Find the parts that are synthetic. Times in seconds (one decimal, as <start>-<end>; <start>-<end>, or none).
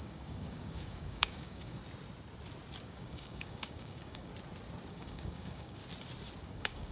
0.0-1.8; 2.8-4.3; 4.9-5.8; 6.5-6.9